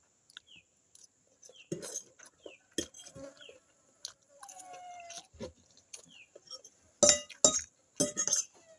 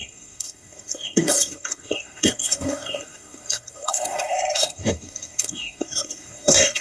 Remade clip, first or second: second